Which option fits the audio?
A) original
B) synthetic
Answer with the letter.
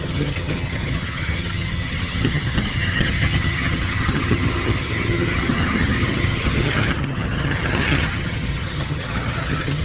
B